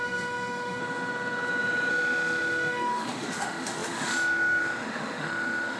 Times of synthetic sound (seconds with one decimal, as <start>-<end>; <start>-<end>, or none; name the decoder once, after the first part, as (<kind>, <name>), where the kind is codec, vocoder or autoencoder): 0.0-0.8 (autoencoder, DAC-VAE); 1.9-5.8